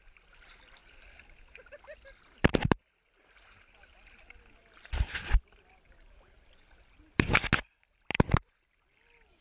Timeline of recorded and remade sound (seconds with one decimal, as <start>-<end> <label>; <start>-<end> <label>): 0.0-9.4 recorded